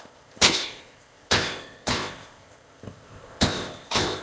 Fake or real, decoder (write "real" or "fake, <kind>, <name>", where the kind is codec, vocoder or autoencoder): fake, codec, ZipCodec